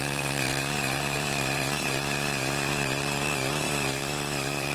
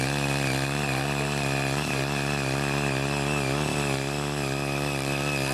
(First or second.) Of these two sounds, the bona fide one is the second